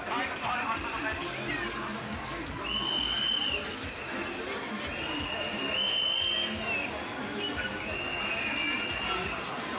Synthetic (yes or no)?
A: no